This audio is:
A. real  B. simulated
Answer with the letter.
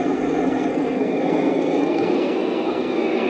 B